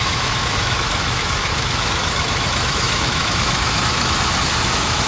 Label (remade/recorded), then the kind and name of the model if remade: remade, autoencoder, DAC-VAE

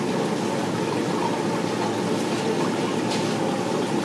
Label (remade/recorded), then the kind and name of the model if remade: recorded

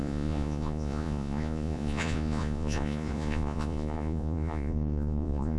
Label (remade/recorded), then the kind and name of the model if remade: remade, vocoder, Vocos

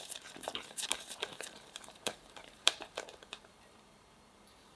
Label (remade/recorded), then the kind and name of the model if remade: remade, vocoder, BigVGAN v2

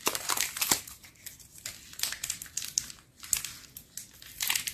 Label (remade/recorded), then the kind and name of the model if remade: recorded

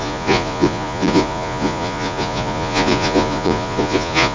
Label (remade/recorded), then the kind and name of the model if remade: remade, vocoder, Vocos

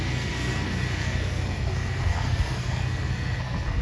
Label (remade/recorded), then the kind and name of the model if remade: remade, codec, SNAC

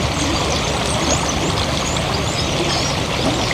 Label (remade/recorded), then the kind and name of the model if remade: recorded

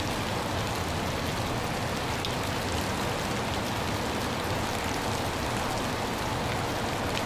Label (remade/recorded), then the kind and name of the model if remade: recorded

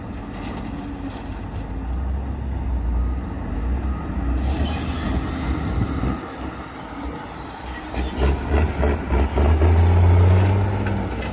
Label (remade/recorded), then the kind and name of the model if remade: recorded